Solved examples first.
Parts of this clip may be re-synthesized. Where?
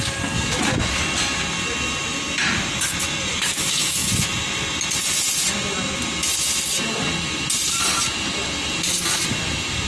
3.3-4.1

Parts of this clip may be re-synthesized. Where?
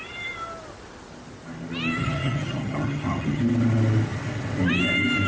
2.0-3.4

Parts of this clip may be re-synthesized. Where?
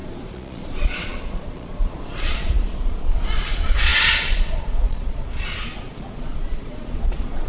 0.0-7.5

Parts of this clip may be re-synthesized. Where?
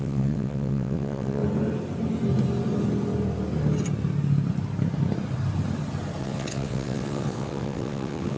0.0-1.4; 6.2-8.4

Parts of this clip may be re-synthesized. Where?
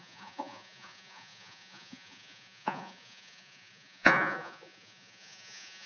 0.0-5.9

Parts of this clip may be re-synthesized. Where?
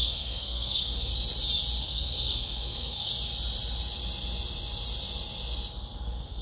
0.0-1.1; 1.8-3.1; 6.0-6.4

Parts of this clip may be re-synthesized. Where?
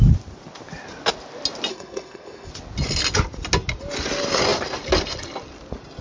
1.7-2.5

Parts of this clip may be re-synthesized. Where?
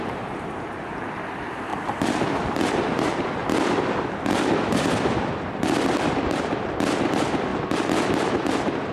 0.0-1.7; 2.7-3.4; 4.5-7.5; 8.1-8.9